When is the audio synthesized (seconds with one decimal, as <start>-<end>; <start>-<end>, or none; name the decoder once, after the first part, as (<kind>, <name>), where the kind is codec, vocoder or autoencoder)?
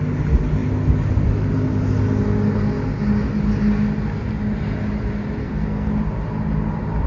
5.4-5.9 (codec, SNAC)